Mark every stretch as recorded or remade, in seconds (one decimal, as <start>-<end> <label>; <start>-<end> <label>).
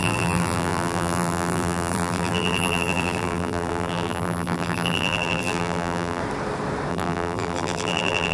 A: 0.0-6.2 remade; 6.2-6.9 recorded; 6.9-8.3 remade